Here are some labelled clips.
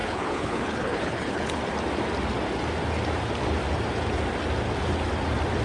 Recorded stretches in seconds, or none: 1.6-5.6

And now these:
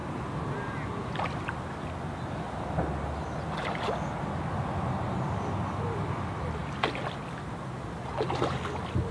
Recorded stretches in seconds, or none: 0.0-9.1

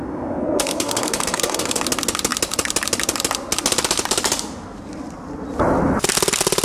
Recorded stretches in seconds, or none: 0.0-0.4; 1.8-6.6

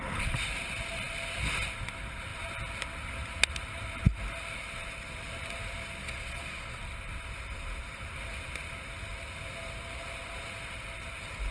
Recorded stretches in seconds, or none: 0.0-6.0; 6.8-11.5

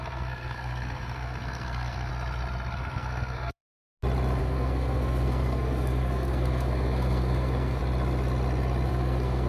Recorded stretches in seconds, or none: 2.1-2.7; 3.8-4.4; 7.8-8.9